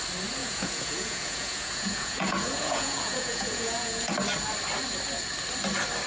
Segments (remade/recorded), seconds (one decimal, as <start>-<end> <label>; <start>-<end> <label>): 0.0-0.4 recorded; 0.4-4.1 remade; 4.1-6.1 recorded